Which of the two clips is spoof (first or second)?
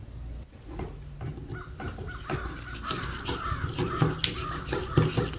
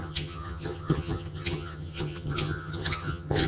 second